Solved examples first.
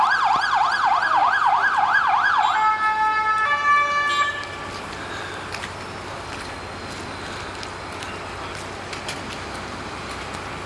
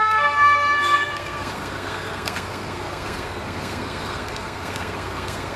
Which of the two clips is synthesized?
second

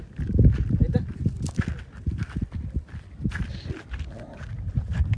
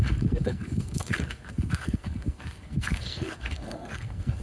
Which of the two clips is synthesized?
second